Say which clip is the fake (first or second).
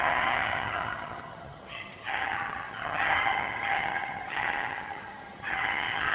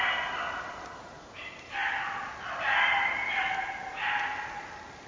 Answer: first